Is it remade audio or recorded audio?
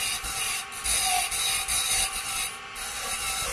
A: recorded